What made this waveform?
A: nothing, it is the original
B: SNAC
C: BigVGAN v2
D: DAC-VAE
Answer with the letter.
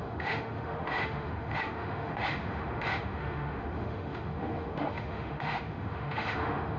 D